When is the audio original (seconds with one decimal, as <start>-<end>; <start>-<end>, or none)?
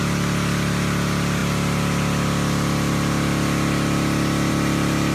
0.0-5.1